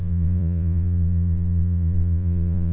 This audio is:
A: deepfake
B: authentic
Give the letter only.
A